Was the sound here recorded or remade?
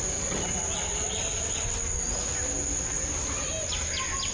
recorded